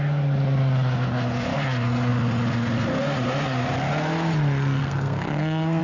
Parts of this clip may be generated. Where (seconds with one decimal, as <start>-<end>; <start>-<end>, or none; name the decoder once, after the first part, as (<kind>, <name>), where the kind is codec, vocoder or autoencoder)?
4.8-5.8 (codec, SNAC)